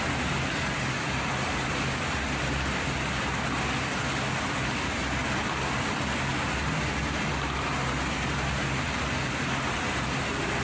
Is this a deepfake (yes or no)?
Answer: no